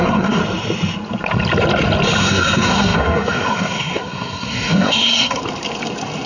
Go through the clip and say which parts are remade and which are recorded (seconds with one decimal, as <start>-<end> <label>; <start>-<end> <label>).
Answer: 0.0-0.4 remade; 0.4-2.2 recorded; 2.2-5.4 remade; 5.4-6.3 recorded